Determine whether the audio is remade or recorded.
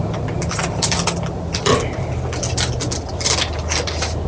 recorded